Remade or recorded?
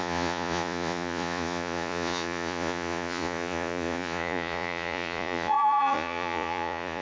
remade